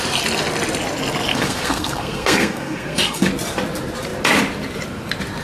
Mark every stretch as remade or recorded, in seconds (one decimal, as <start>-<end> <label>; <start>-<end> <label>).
0.0-1.3 recorded; 1.3-3.3 remade; 3.3-5.4 recorded